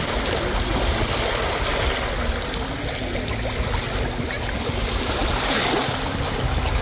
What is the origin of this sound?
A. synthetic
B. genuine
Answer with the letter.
B